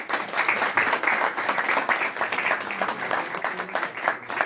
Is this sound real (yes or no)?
yes